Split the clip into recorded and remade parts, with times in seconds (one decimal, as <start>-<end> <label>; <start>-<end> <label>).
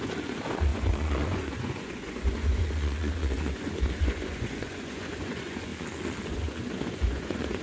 0.0-5.7 remade; 5.7-6.3 recorded; 6.3-7.6 remade